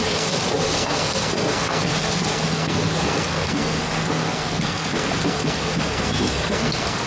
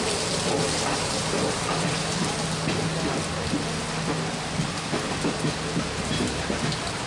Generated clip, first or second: first